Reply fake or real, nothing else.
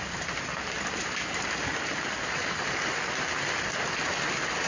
real